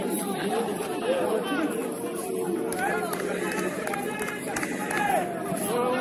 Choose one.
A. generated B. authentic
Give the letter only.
B